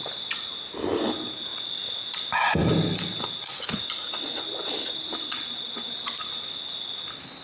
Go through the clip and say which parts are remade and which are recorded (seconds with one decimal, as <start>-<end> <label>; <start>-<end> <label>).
0.0-2.6 recorded; 2.6-3.5 remade; 3.5-7.4 recorded